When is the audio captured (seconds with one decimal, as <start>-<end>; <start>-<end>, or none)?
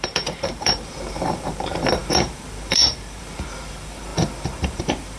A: none